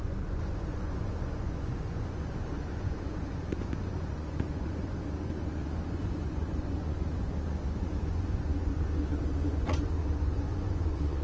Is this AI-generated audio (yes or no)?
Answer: yes